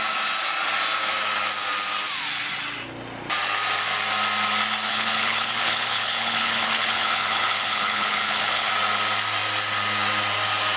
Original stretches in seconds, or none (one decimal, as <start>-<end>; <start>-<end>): 0.0-4.9; 8.7-10.8